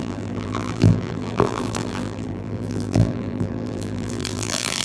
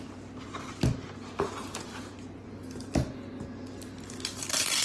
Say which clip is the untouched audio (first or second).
second